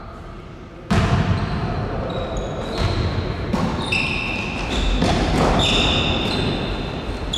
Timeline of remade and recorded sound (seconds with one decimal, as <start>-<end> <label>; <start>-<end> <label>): 0.0-7.4 recorded